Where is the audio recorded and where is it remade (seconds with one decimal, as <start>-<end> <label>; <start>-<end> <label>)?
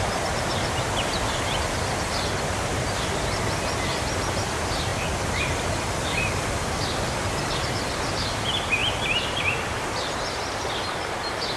0.0-11.6 recorded